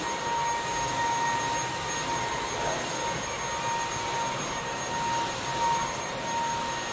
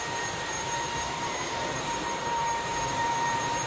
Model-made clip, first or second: second